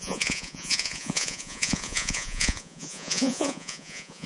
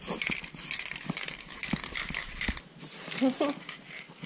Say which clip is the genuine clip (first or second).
second